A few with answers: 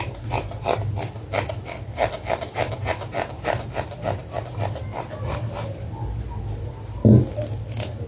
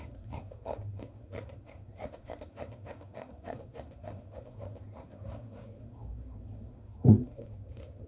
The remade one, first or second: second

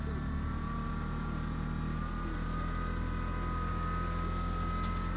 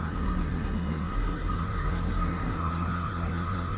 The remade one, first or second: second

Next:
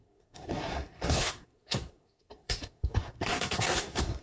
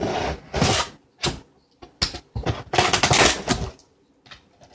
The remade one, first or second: first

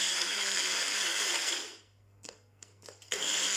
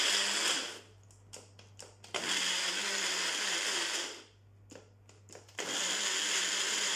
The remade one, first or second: first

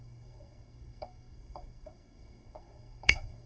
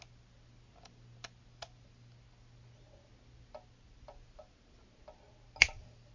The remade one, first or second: first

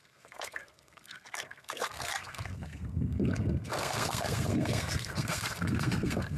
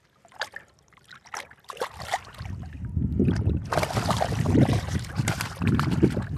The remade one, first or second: first